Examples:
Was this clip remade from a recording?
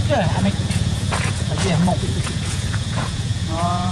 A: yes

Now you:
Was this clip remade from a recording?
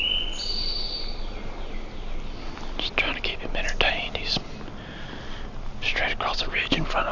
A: no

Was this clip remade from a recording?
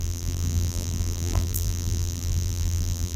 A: yes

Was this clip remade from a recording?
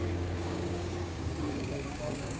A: yes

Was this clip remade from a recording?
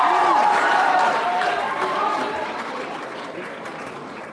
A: yes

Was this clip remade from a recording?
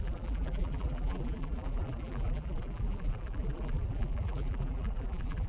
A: yes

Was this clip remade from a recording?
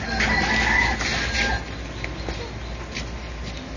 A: no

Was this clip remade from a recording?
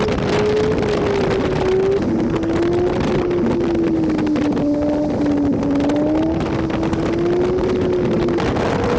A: no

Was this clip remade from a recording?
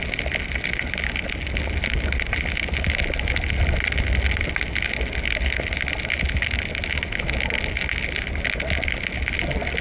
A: no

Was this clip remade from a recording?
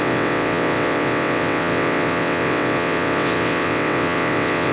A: yes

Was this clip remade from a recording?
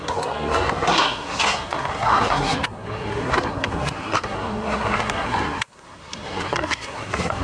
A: yes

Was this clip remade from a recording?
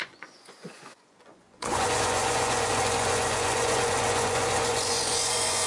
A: yes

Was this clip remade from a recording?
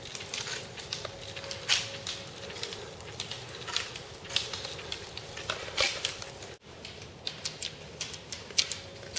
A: no